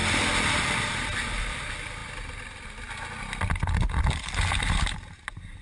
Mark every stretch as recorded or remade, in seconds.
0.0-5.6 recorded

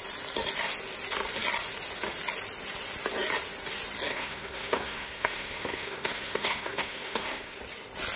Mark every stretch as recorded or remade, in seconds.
0.0-4.1 recorded; 4.1-7.6 remade; 7.6-8.2 recorded

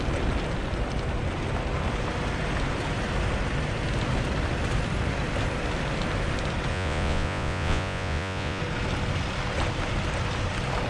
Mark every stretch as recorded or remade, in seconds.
0.0-6.7 recorded; 6.7-8.6 remade; 8.6-10.9 recorded

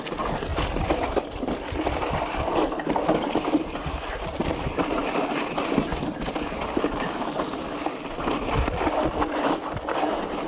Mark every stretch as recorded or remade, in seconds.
0.0-0.5 recorded; 0.5-3.4 remade; 3.4-4.4 recorded; 4.4-9.6 remade; 9.6-10.5 recorded

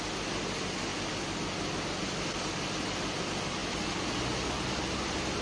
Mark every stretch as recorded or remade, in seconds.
0.0-0.9 recorded; 0.9-3.2 remade; 3.2-5.4 recorded